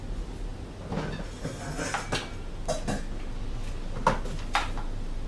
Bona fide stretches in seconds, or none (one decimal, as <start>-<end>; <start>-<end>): 0.0-5.3